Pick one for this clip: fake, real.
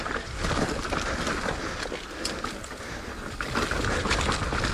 real